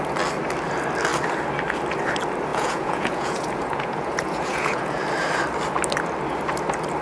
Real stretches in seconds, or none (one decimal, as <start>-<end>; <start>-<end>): 0.0-2.5; 5.0-7.0